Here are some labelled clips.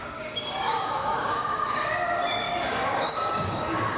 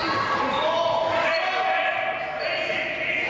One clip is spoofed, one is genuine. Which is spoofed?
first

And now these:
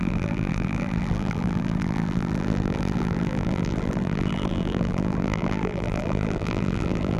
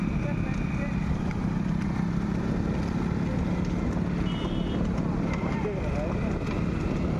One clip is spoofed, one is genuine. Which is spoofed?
first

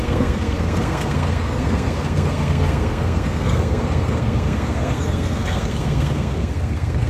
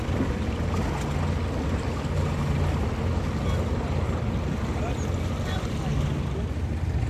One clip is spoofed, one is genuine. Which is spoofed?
first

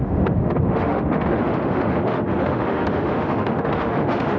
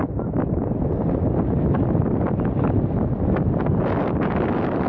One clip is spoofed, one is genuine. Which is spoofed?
first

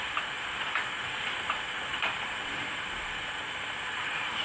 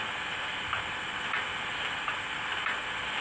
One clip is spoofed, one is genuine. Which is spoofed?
first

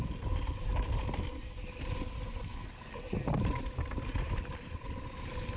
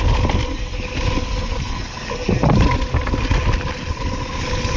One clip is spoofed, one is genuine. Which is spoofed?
first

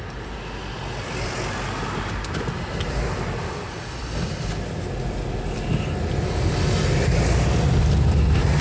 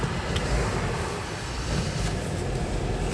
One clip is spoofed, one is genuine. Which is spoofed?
second